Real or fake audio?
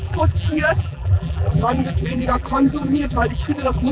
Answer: fake